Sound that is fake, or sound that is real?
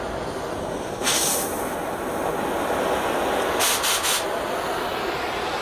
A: real